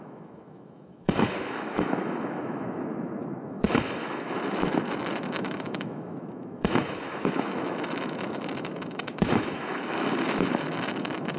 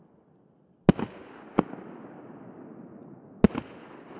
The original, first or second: second